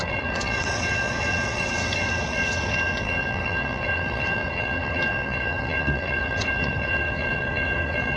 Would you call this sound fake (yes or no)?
yes